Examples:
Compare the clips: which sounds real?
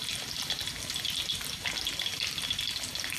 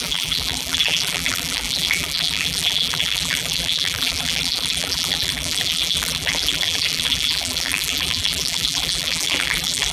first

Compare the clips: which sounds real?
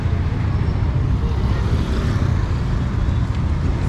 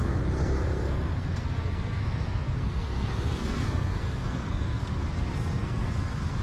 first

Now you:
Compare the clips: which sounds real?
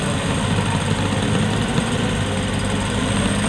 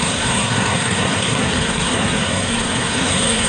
first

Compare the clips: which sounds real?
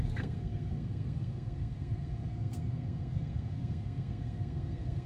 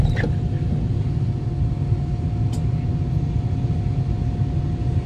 second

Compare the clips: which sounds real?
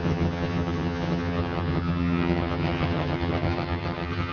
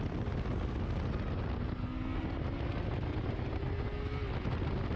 second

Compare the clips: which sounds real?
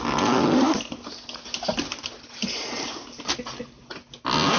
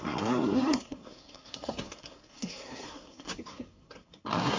first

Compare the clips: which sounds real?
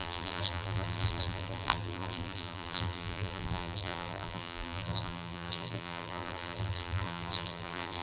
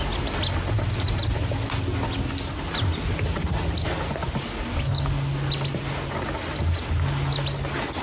second